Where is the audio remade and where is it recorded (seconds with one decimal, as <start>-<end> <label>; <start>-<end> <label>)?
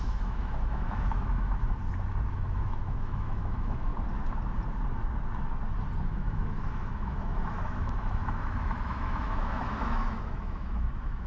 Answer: 0.0-1.8 remade; 1.8-2.3 recorded; 2.3-3.9 remade; 3.9-6.0 recorded; 6.0-11.3 remade